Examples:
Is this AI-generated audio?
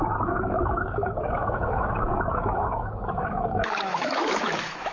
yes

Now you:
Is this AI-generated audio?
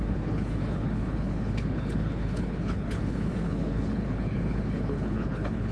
yes